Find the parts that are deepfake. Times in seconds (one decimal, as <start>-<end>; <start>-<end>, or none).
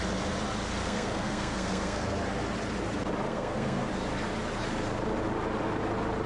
0.8-2.0; 3.3-3.9